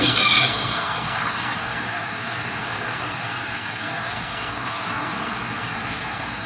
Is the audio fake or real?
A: fake